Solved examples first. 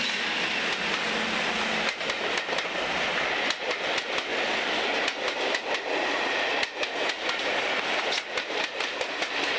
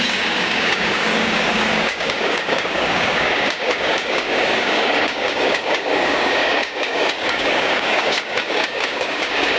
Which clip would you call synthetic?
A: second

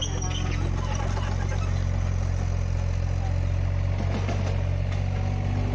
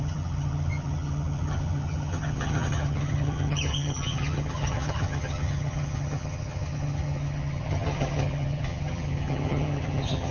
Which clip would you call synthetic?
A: second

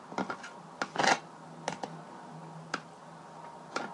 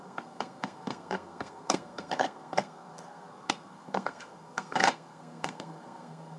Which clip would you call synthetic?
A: second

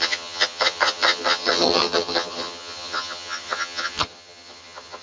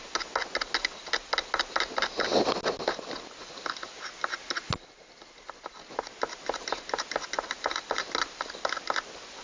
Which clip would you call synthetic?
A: first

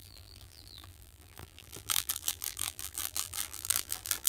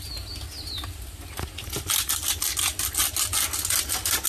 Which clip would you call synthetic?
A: first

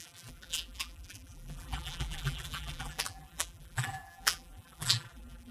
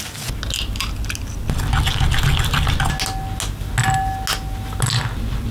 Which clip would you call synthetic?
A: first